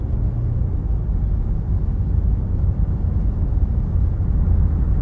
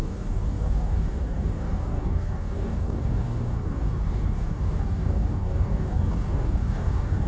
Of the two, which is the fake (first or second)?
second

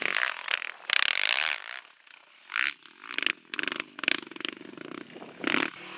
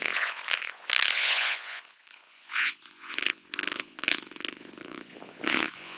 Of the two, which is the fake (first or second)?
second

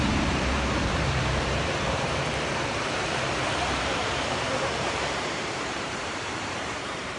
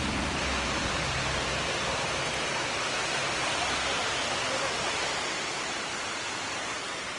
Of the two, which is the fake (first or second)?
first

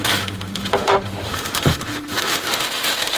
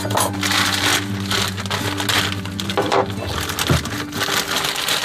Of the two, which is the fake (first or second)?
first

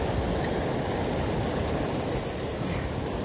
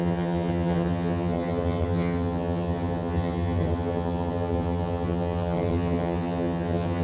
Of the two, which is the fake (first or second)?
second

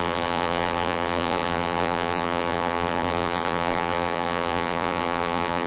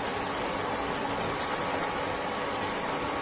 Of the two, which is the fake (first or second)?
first